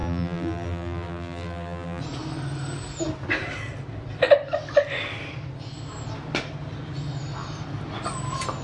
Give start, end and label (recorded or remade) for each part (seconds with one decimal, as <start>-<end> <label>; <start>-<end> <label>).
0.0-2.0 remade; 2.0-8.6 recorded